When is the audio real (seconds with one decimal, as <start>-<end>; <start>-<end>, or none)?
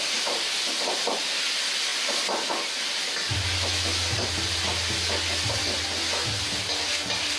0.0-7.4